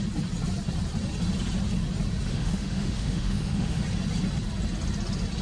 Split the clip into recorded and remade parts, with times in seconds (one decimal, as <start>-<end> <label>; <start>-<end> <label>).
0.0-2.3 recorded; 2.3-3.8 remade; 3.8-5.4 recorded